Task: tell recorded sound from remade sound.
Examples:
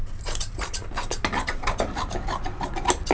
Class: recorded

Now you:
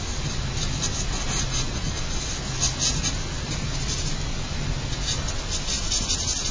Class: recorded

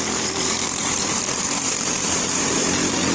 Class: remade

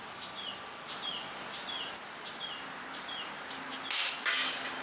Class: recorded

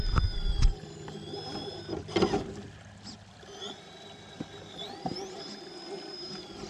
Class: recorded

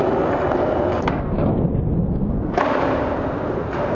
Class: recorded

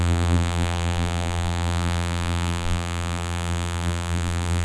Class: remade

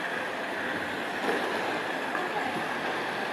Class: recorded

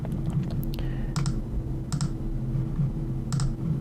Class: recorded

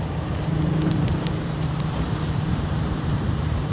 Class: remade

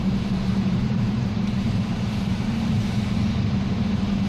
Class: remade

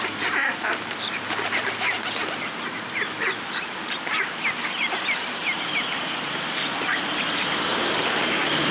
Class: remade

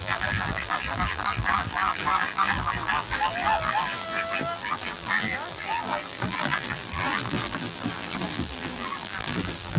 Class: remade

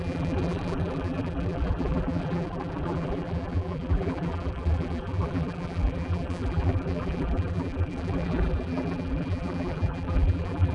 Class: remade